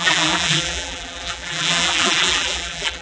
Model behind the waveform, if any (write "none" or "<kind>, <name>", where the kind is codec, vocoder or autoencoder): vocoder, BigVGAN v2